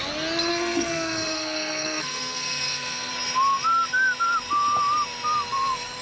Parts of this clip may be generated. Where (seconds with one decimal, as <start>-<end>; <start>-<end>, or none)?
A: 0.5-3.1

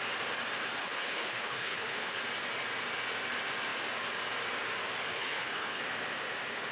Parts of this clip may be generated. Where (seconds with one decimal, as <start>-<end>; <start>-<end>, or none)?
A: 0.8-2.2; 5.1-5.8

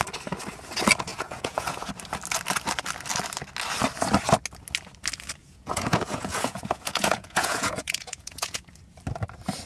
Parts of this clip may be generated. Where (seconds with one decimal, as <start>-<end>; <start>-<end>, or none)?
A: 1.1-1.9; 5.4-8.7

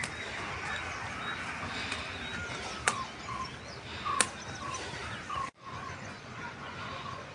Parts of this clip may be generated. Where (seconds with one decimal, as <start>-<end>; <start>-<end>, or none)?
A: 5.0-7.3

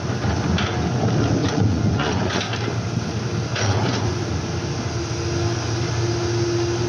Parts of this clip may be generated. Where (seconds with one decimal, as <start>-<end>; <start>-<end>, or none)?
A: 1.4-2.4; 3.5-4.2